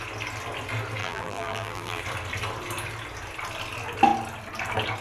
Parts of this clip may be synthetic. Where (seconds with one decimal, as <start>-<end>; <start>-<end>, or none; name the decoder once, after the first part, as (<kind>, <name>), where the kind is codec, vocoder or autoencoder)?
1.0-2.0 (vocoder, BigVGAN v2)